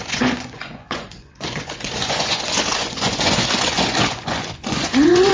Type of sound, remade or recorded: remade